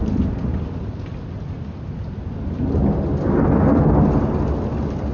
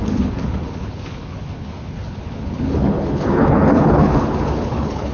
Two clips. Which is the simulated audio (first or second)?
second